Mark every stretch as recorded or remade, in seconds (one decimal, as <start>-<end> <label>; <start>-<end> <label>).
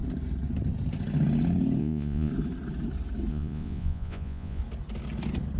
0.0-1.8 recorded; 1.8-2.3 remade; 2.3-3.3 recorded; 3.3-4.6 remade; 4.6-5.6 recorded